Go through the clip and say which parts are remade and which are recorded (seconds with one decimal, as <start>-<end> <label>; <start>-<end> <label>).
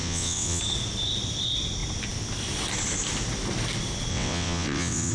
0.0-0.6 remade; 0.6-4.1 recorded; 4.1-5.1 remade